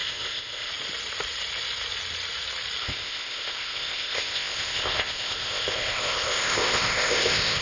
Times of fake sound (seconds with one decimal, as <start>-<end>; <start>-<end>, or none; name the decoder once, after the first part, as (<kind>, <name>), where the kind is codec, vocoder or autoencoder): 0.0-0.7 (codec, ZipCodec); 2.8-7.6